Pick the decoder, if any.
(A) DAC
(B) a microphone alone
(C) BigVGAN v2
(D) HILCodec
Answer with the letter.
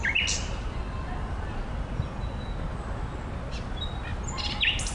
B